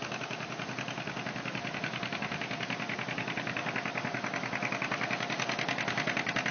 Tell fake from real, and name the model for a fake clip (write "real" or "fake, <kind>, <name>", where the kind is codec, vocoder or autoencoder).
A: real